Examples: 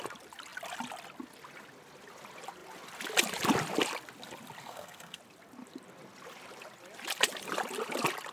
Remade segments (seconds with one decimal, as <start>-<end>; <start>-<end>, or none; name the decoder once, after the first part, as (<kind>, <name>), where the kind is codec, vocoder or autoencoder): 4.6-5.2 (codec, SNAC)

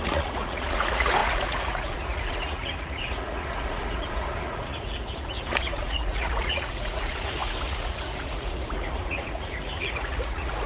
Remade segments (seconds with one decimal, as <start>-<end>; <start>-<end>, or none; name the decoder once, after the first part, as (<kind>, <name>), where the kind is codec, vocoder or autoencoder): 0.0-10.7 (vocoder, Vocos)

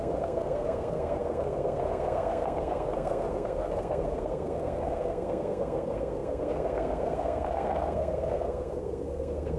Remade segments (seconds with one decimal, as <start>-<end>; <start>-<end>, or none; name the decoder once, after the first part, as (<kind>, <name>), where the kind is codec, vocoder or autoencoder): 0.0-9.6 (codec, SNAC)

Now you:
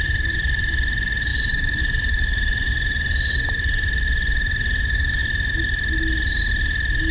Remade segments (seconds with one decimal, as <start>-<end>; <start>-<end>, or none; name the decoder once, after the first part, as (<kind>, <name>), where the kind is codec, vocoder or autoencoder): 0.0-5.2 (vocoder, BigVGAN v2)

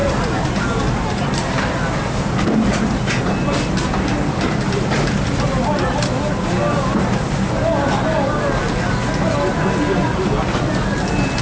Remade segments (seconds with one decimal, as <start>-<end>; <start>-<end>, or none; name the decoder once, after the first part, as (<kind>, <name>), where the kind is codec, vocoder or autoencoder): none